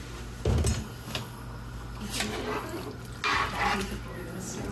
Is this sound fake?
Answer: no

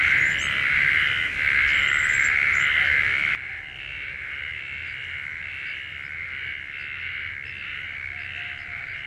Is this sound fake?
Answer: no